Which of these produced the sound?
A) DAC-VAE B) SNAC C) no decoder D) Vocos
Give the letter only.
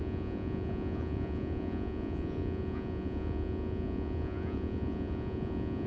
D